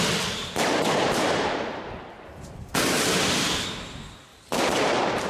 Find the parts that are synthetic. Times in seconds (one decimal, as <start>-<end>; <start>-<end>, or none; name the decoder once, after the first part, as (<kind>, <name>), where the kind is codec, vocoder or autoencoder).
0.4-3.4 (vocoder, BigVGAN v2); 4.3-5.3